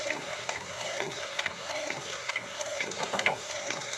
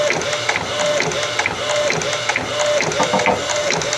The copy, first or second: first